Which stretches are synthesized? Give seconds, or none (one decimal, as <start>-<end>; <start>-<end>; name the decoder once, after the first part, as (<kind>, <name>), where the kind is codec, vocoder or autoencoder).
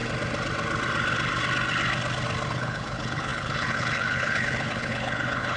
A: 2.5-5.6 (codec, HILCodec)